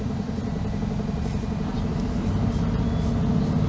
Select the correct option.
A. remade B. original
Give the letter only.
B